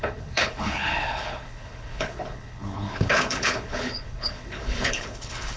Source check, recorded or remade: remade